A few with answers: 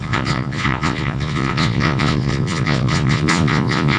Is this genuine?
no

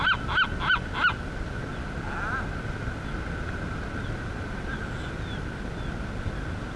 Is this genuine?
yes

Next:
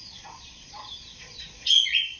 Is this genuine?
no